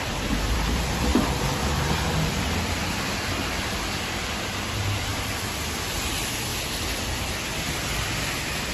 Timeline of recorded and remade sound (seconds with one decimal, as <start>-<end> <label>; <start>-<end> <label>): 0.0-6.5 remade; 6.5-8.7 recorded